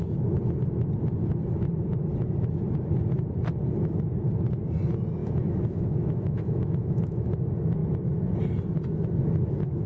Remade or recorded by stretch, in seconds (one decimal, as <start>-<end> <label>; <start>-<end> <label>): 0.0-5.2 recorded; 5.2-7.3 remade; 7.3-9.9 recorded